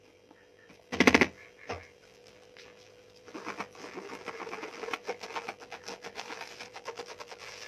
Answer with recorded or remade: remade